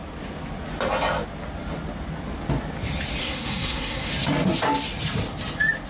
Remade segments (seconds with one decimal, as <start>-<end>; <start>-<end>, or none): 3.2-4.1